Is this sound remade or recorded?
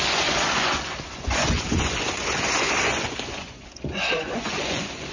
remade